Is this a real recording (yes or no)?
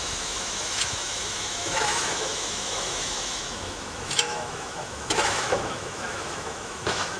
no